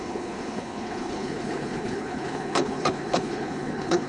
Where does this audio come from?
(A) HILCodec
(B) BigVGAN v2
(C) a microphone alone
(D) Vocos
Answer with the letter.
A